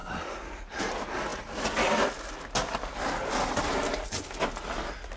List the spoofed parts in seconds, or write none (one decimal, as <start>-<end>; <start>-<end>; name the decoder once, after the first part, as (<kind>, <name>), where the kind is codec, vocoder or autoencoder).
0.0-0.8 (vocoder, BigVGAN v2)